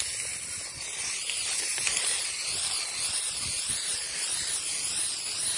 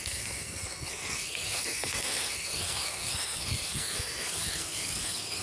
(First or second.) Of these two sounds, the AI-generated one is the second